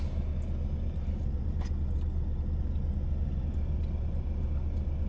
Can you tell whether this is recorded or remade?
recorded